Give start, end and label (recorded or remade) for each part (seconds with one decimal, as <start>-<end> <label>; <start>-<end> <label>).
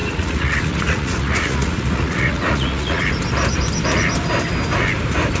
0.0-3.0 remade; 3.0-5.4 recorded